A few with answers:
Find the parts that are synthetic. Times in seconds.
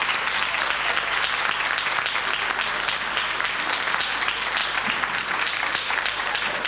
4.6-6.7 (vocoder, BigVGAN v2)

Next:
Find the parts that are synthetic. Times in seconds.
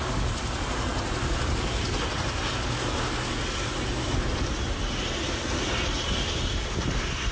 none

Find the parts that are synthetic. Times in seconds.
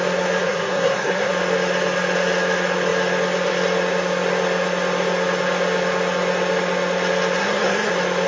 0.4-1.3 (codec, SNAC); 7.4-7.9